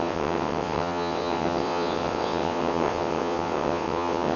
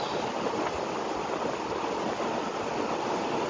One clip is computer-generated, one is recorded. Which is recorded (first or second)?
second